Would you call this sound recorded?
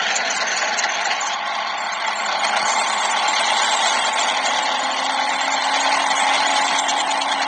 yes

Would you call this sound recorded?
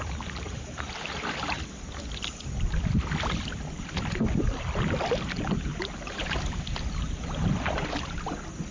yes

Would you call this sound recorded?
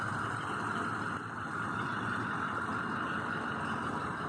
yes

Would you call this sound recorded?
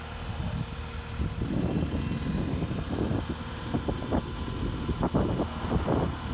yes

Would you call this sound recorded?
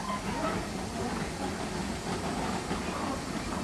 yes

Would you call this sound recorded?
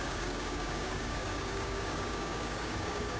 no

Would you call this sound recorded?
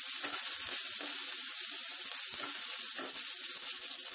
yes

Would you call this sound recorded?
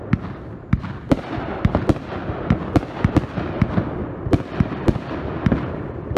yes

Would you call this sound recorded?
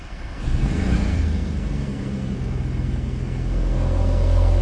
no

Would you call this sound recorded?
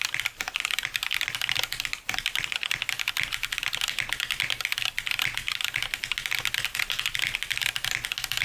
yes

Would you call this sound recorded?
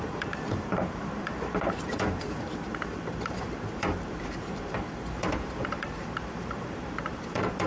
no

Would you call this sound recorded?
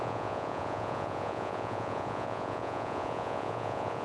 no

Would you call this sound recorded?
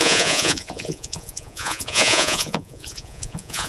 no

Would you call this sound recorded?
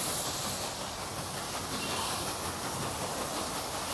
yes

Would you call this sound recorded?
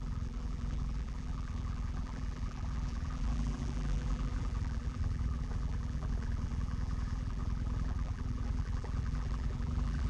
no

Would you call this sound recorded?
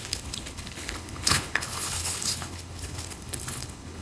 no